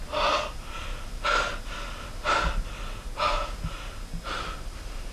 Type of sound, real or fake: real